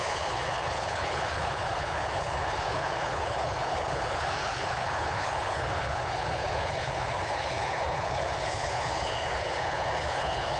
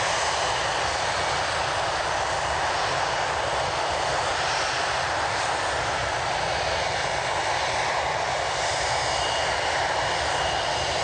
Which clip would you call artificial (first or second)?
first